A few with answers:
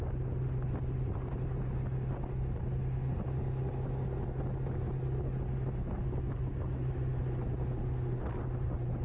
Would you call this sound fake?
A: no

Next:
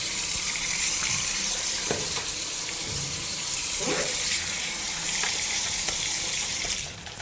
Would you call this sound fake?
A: yes